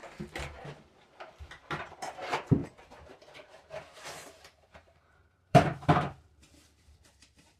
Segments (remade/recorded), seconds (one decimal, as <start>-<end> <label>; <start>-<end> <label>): 0.0-0.9 recorded; 0.9-7.6 remade